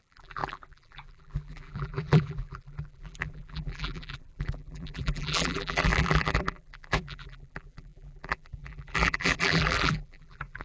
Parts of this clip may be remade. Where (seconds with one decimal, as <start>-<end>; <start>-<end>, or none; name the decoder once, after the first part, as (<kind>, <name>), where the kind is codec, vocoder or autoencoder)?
0.0-10.6 (vocoder, BigVGAN v2)